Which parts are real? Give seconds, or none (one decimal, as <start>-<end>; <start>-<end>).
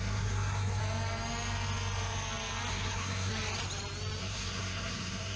0.8-2.7; 3.3-4.2